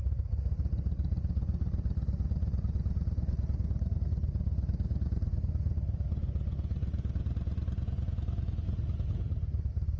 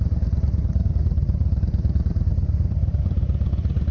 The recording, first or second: first